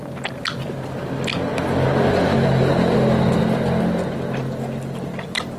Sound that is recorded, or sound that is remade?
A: recorded